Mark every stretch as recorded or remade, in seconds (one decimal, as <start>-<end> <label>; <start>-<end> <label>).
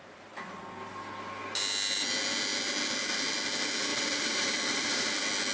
0.0-0.6 remade; 0.6-3.9 recorded; 3.9-5.1 remade; 5.1-5.5 recorded